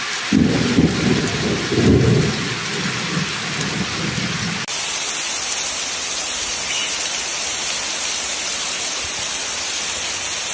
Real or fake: real